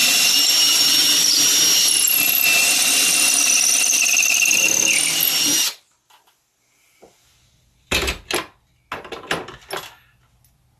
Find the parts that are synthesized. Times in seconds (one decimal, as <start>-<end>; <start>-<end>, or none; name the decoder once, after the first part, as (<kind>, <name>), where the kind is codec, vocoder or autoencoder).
none

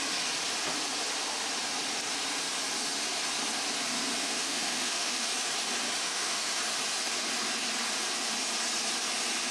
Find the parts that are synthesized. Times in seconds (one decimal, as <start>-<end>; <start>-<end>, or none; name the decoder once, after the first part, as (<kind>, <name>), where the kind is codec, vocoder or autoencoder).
4.2-5.3 (autoencoder, DAC-VAE); 6.0-6.6

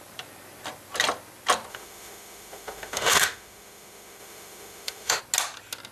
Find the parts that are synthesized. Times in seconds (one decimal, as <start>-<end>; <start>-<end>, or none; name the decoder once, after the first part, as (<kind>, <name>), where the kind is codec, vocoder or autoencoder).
1.7-5.2 (autoencoder, DAC-VAE)